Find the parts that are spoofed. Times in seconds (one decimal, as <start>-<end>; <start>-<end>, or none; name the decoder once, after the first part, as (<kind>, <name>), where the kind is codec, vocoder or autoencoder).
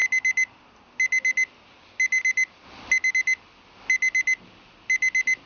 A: none